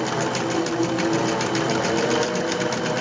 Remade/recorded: recorded